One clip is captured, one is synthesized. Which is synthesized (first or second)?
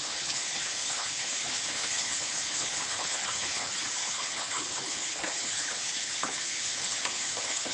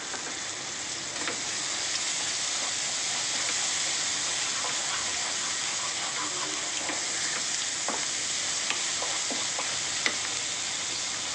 first